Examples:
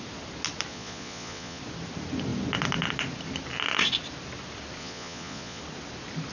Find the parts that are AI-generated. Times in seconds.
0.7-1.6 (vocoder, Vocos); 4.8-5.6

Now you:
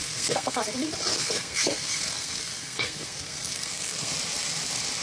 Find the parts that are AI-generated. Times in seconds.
0.0-0.6 (codec, SNAC); 1.1-4.1